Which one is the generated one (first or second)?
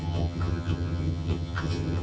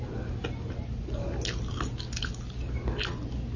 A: first